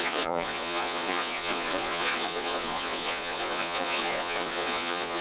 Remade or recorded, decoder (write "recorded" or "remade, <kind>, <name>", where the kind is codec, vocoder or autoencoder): remade, vocoder, Vocos